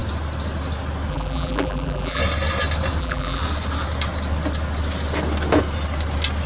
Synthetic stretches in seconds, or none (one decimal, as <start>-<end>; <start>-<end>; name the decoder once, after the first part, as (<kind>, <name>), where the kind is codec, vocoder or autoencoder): 1.1-2.2 (vocoder, BigVGAN v2); 3.0-3.4

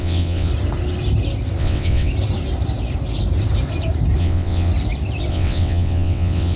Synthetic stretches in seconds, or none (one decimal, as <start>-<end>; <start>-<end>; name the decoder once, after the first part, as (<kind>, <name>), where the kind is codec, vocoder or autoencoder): 0.0-0.5 (vocoder, WaveNeXt); 1.6-2.1; 4.2-4.7; 5.3-6.6

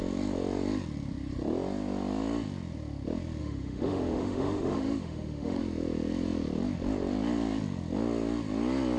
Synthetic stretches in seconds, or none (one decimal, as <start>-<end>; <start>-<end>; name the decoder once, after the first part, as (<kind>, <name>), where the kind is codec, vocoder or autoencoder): 3.4-5.6 (autoencoder, DAC-VAE)

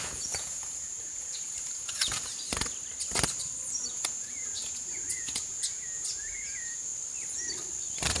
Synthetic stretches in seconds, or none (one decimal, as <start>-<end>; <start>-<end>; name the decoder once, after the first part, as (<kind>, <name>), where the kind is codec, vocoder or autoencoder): 0.0-2.3 (vocoder, Vocos); 3.8-6.9

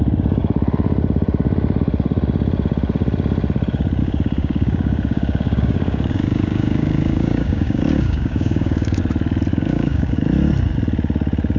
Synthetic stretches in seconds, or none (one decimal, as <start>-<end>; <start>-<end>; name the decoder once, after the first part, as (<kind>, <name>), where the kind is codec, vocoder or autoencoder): 4.0-9.0 (codec, DAC); 9.5-10.2

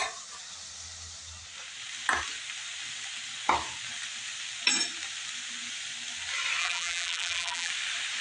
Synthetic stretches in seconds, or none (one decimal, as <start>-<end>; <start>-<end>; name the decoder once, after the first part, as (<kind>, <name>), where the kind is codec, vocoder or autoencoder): 6.6-7.7 (vocoder, BigVGAN v2)